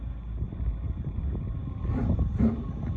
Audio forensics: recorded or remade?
recorded